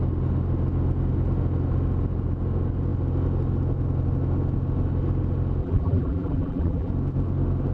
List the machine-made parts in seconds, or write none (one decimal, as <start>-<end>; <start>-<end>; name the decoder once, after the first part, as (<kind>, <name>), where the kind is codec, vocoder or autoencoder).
5.6-6.9 (vocoder, BigVGAN v2)